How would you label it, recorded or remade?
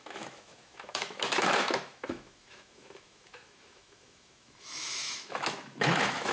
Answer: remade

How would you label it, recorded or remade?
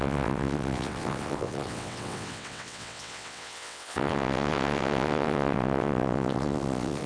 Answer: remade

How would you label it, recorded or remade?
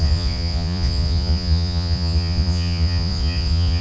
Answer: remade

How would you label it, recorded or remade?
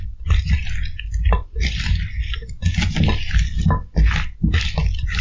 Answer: recorded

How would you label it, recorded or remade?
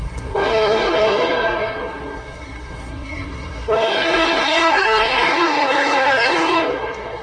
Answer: remade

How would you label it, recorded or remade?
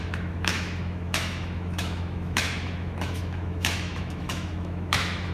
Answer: remade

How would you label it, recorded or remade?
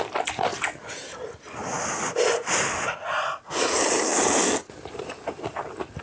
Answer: recorded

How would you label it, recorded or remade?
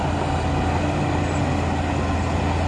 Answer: recorded